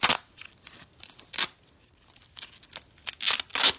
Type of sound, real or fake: real